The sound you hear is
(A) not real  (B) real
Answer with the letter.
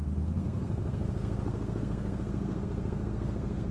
A